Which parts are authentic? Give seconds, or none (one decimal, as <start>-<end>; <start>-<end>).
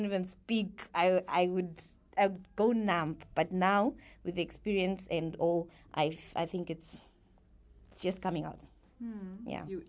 0.0-9.9